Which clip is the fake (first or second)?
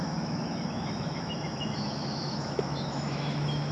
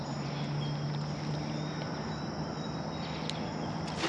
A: first